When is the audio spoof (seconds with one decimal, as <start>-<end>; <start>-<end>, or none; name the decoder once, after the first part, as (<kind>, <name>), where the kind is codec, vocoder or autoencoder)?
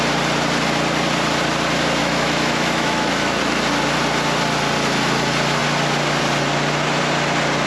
2.0-3.4 (autoencoder, DAC-VAE)